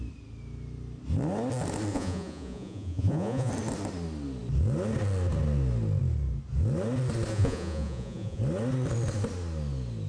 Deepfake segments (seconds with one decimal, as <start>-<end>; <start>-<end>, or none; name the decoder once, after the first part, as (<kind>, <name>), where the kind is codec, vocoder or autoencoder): 1.9-3.5 (vocoder, Vocos); 7.3-8.4